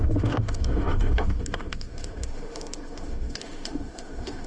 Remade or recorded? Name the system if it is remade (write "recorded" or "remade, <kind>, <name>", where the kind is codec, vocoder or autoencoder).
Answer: remade, autoencoder, DAC-VAE